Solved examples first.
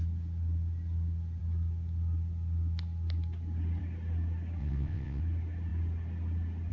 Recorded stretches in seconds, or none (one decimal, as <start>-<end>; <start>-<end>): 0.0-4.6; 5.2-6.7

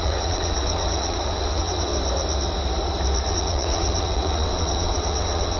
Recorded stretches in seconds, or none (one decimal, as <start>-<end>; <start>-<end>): 1.9-3.3

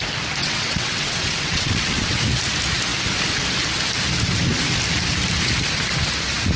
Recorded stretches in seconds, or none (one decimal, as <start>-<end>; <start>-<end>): 0.0-0.4; 2.2-6.6